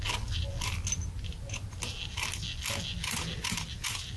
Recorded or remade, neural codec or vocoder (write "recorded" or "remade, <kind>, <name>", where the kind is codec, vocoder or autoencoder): recorded